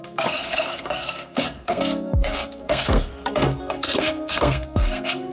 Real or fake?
fake